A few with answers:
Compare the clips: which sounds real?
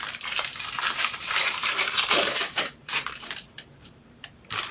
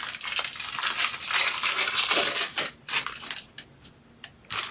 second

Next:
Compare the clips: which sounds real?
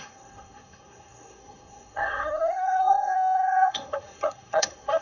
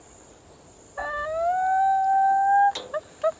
second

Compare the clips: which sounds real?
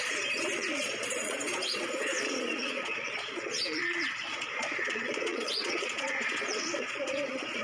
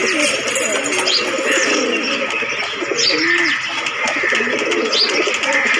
second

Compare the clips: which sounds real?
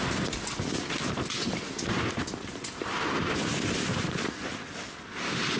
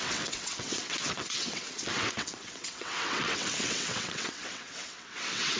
first